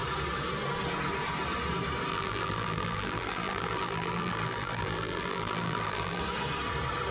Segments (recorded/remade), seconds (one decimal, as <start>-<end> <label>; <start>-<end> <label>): 0.0-2.1 recorded; 2.1-6.2 remade; 6.2-7.1 recorded